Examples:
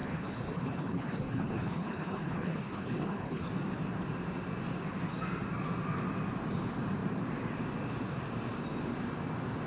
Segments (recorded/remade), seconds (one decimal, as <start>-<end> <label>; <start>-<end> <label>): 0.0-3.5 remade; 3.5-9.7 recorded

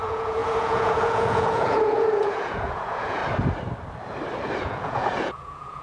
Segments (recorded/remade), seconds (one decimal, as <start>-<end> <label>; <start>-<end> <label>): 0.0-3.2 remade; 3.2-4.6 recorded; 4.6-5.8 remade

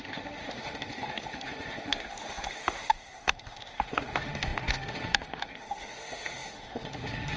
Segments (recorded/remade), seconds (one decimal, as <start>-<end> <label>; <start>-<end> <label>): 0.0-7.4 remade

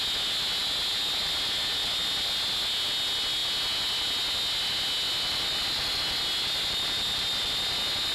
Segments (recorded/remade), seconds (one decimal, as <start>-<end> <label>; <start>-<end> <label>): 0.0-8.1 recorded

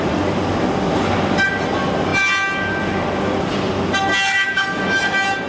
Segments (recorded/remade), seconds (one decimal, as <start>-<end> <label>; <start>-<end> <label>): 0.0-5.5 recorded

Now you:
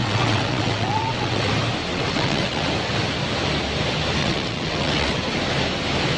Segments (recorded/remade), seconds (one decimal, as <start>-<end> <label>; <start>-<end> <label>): 0.0-1.5 remade; 1.5-1.9 recorded; 1.9-2.7 remade; 2.7-4.2 recorded; 4.2-5.2 remade; 5.2-6.2 recorded

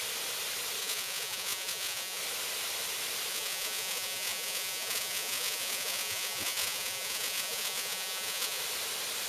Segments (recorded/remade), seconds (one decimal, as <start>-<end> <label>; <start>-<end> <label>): 0.0-0.8 recorded; 0.8-2.2 remade; 2.2-3.3 recorded; 3.3-8.6 remade; 8.6-9.3 recorded